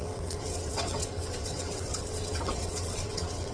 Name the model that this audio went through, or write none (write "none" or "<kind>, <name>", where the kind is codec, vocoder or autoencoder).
vocoder, WaveNeXt